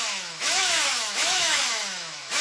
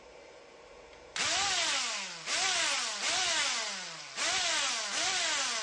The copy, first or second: first